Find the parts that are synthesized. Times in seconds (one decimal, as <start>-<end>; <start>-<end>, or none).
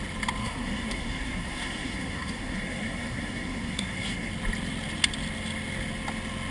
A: 0.4-4.3